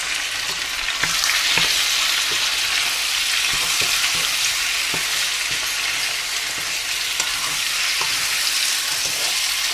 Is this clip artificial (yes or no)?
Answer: no